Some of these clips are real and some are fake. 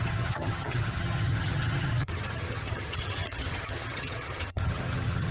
fake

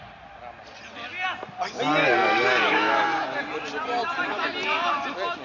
real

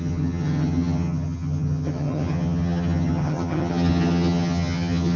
fake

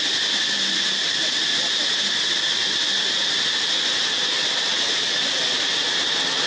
real